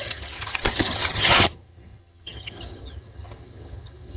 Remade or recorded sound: remade